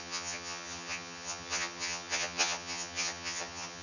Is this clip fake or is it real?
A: fake